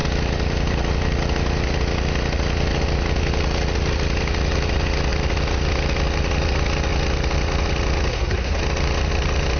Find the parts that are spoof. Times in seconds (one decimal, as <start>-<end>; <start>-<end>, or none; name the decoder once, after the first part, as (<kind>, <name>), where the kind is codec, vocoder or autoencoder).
8.1-8.6 (codec, SNAC)